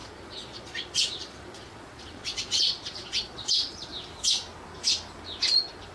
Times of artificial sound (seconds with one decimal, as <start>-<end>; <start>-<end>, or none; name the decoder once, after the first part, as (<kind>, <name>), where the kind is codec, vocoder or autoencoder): 0.0-3.9 (vocoder, Vocos)

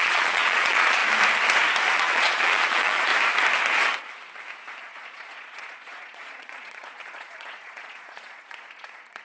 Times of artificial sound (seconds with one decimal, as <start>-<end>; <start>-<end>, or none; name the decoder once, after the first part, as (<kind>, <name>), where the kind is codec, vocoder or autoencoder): 0.0-1.0 (vocoder, Vocos); 1.9-3.1; 4.8-9.2

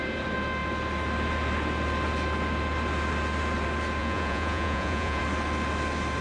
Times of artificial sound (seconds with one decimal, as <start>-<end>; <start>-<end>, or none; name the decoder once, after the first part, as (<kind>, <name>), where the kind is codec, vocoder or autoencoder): 4.0-5.2 (vocoder, Vocos)

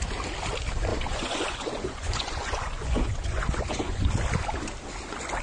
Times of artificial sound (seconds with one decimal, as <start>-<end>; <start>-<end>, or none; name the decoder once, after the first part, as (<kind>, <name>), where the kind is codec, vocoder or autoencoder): 0.9-4.1 (vocoder, Vocos)

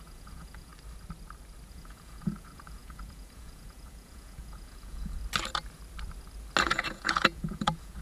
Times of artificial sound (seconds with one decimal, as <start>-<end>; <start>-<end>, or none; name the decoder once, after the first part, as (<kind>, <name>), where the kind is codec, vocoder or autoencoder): 0.0-0.7 (vocoder, Vocos); 1.7-5.2; 6.6-8.0